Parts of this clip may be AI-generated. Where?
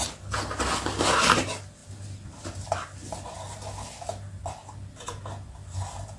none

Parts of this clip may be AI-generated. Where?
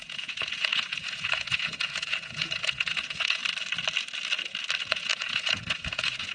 0.0-3.4 (vocoder, Vocos); 4.9-6.3